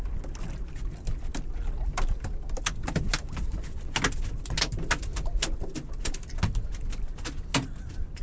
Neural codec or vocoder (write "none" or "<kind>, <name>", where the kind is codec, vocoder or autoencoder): none